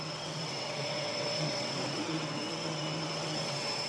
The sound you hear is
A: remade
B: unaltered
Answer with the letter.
A